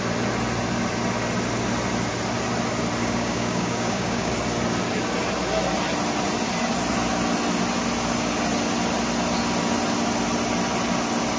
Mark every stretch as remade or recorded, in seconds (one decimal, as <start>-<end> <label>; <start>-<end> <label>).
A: 0.0-3.0 recorded; 3.0-4.3 remade; 4.3-11.4 recorded